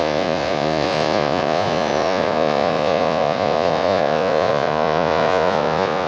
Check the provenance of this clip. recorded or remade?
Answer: remade